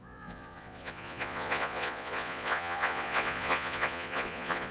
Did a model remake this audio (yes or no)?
yes